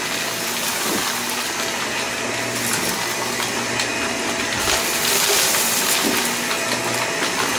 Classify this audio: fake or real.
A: real